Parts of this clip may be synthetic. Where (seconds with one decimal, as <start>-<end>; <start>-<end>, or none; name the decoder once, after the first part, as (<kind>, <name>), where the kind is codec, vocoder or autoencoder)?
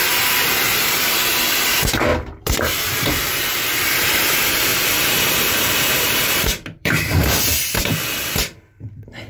0.0-9.3 (vocoder, BigVGAN v2)